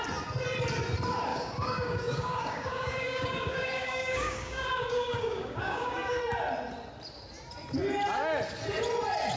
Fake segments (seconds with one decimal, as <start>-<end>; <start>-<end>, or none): 1.3-6.2